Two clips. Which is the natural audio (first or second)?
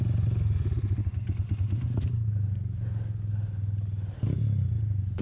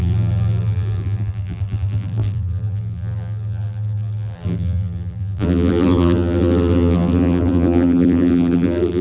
first